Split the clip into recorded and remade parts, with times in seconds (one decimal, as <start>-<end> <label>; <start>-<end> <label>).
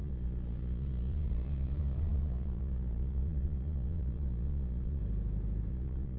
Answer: 0.0-5.0 remade; 5.0-5.7 recorded; 5.7-6.2 remade